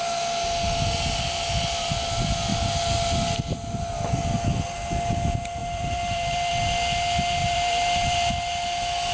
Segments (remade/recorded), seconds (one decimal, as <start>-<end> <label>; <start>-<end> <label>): 0.0-5.6 recorded; 5.6-6.5 remade; 6.5-7.4 recorded; 7.4-8.3 remade; 8.3-9.1 recorded